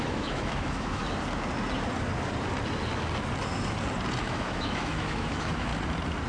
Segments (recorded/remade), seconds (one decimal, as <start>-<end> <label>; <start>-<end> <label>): 0.0-1.0 remade; 1.0-4.2 recorded; 4.2-5.7 remade; 5.7-6.3 recorded

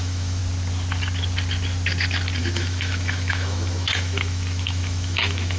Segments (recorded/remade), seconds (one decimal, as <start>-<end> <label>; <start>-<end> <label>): 0.0-0.4 remade; 0.4-2.4 recorded; 2.4-5.6 remade

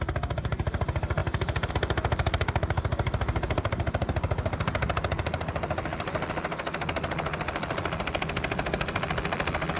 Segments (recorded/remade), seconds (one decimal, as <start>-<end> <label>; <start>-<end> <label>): 0.0-9.8 recorded

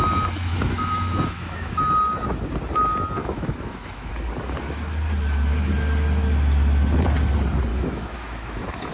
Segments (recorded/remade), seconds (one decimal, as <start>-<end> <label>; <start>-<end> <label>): 0.0-0.5 recorded; 0.5-1.8 remade; 1.8-3.2 recorded; 3.2-4.1 remade; 4.1-7.7 recorded; 7.7-8.9 remade

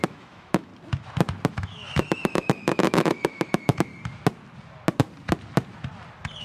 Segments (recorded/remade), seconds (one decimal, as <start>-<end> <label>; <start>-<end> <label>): 0.0-0.7 remade; 0.7-1.5 recorded; 1.5-3.9 remade; 3.9-6.4 recorded

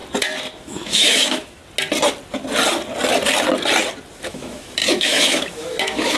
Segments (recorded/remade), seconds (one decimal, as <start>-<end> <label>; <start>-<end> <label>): 0.0-0.6 recorded; 0.6-1.6 remade; 1.6-4.2 recorded; 4.2-6.2 remade

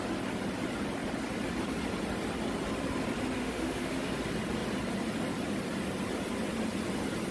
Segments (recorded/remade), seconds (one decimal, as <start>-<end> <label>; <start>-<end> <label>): 0.0-3.4 recorded; 3.4-4.1 remade; 4.1-7.3 recorded